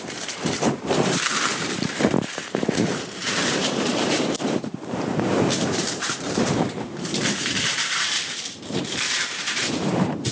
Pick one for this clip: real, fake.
fake